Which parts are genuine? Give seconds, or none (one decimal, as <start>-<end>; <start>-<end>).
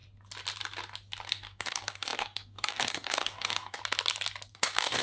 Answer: 0.0-1.3; 3.8-4.5